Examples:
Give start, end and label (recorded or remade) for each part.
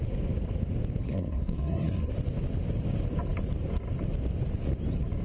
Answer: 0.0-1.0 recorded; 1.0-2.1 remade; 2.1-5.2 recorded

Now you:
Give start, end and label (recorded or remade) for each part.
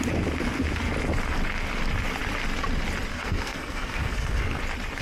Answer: 0.0-3.1 recorded; 3.1-4.6 remade; 4.6-5.0 recorded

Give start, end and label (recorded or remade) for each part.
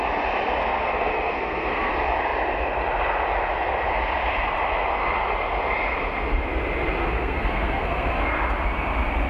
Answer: 0.0-0.6 recorded; 0.6-1.9 remade; 1.9-7.0 recorded; 7.0-8.2 remade; 8.2-9.3 recorded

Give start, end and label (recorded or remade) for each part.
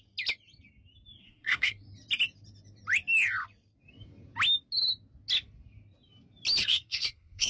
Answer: 0.0-1.2 recorded; 1.2-1.9 remade; 1.9-6.6 recorded; 6.6-7.5 remade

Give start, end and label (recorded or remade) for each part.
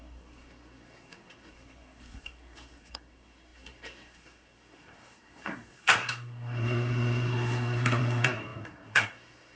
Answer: 0.0-9.6 remade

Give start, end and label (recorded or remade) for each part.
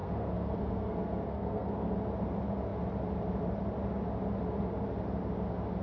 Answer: 0.0-1.9 remade; 1.9-5.8 recorded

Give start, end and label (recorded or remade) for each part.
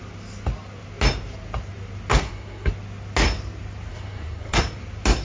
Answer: 0.0-2.1 recorded; 2.1-2.7 remade; 2.7-3.9 recorded; 3.9-4.6 remade; 4.6-5.2 recorded